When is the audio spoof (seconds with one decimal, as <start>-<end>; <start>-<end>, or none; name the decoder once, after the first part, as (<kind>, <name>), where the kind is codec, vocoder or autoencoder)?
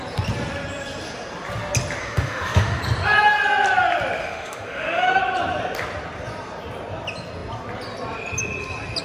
2.0-2.8 (autoencoder, DAC-VAE); 4.2-5.2